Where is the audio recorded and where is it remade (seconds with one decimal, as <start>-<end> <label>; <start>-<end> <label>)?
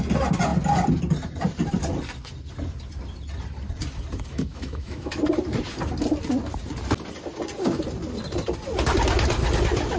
0.0-4.3 recorded; 4.3-5.2 remade; 5.2-10.0 recorded